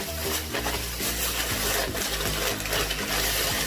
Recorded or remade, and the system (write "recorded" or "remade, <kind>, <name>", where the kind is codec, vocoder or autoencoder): recorded